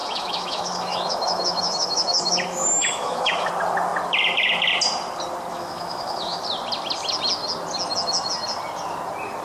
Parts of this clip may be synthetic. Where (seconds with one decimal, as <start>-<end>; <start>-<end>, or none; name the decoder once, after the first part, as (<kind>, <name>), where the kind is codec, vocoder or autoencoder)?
0.0-3.5 (autoencoder, DAC-VAE); 5.5-6.4